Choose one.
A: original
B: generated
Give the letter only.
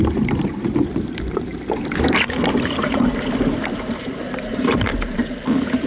B